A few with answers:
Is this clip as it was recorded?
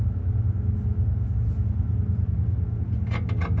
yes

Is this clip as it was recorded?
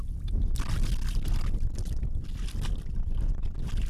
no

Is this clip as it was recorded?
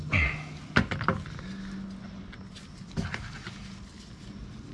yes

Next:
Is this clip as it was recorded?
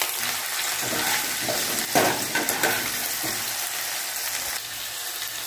no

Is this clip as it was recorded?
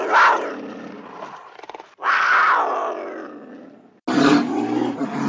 yes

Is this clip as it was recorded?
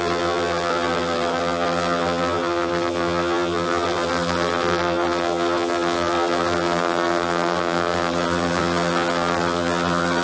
no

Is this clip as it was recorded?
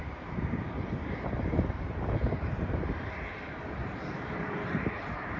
no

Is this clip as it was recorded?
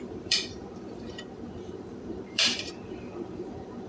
no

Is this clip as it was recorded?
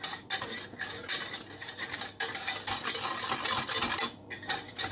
yes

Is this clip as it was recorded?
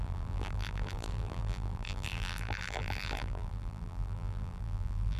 no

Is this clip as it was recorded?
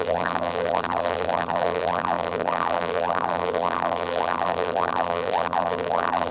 no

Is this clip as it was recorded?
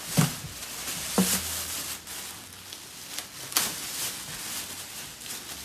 yes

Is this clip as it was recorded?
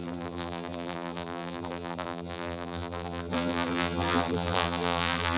no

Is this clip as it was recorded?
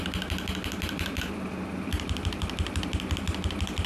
yes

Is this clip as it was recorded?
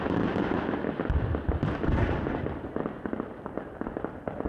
no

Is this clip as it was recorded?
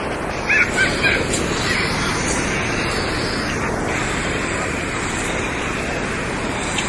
yes